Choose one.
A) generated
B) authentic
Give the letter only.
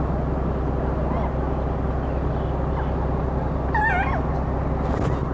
B